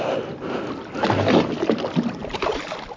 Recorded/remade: recorded